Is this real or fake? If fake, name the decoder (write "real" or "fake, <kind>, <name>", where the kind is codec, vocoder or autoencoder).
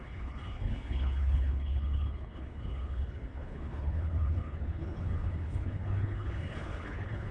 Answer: fake, codec, HILCodec